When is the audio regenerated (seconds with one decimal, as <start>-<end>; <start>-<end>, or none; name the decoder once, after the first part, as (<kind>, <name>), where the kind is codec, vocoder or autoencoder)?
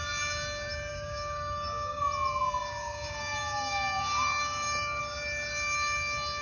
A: 0.9-2.0 (codec, DAC); 2.6-5.0